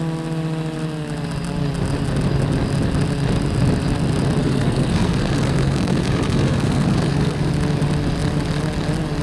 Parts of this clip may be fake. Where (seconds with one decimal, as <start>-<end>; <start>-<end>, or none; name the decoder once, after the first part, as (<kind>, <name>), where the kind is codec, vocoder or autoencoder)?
4.4-7.5 (codec, SNAC)